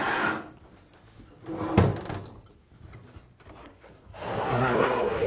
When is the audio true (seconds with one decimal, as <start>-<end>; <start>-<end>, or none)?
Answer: 0.0-3.6